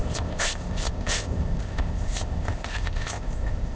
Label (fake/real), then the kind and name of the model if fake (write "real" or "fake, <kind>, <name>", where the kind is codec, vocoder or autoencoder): fake, codec, ZipCodec